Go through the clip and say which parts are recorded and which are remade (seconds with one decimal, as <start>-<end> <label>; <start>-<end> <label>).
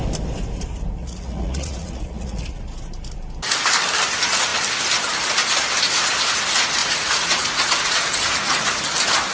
0.0-1.0 recorded; 1.0-2.6 remade; 2.6-6.8 recorded; 6.8-8.8 remade; 8.8-9.3 recorded